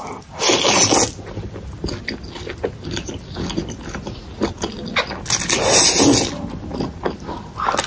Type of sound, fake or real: real